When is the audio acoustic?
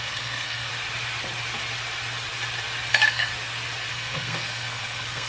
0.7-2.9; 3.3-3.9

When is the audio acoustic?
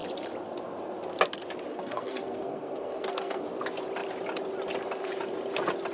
0.0-1.7; 3.4-5.9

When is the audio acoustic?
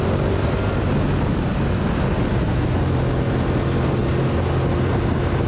0.0-5.5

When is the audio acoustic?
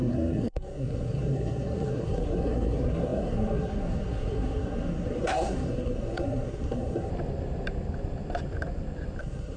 7.1-9.2